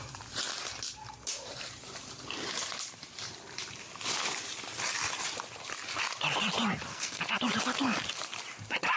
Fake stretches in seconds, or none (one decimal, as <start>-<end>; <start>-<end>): 6.9-7.4